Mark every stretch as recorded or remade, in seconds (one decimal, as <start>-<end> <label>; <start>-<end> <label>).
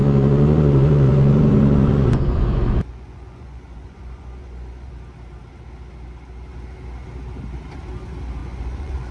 0.0-4.9 remade; 4.9-8.4 recorded; 8.4-9.1 remade